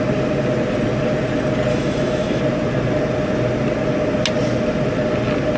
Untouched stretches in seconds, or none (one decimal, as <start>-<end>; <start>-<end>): 0.0-1.7; 2.4-5.6